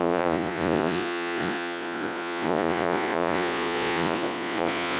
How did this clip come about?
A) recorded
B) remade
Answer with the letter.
B